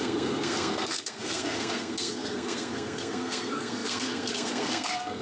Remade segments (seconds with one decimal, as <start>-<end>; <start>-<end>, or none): 0.0-5.2